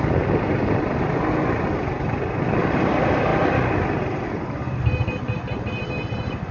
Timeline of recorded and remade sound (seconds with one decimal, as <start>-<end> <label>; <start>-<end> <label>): 0.0-6.5 recorded